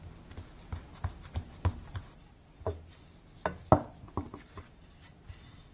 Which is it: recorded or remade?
recorded